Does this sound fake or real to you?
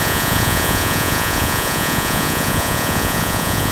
fake